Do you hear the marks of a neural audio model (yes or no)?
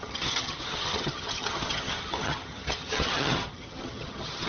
yes